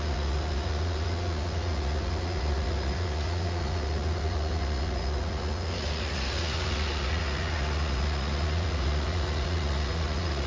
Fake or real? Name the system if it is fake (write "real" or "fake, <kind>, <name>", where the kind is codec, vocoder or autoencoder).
fake, vocoder, Vocos